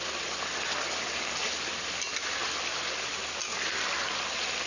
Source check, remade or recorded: recorded